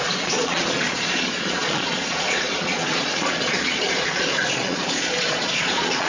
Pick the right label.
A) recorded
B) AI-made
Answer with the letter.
B